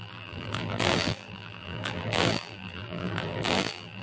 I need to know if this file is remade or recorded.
remade